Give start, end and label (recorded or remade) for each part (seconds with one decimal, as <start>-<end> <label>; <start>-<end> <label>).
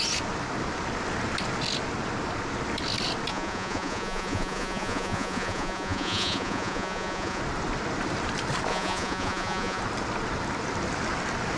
0.0-3.3 recorded; 3.3-7.4 remade; 7.4-8.7 recorded; 8.7-9.8 remade; 9.8-11.6 recorded